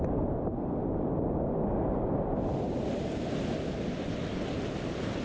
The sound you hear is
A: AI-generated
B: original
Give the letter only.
B